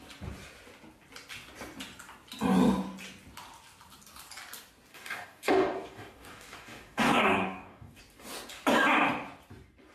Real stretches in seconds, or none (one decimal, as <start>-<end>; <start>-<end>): 0.0-4.9; 8.0-9.9